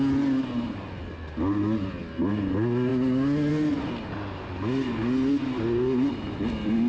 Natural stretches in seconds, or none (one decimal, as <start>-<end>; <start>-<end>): 0.0-6.9